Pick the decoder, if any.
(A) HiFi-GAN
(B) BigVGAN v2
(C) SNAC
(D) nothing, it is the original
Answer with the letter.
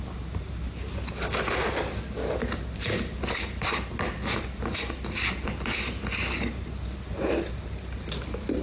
D